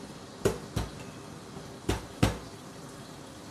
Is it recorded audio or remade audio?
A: recorded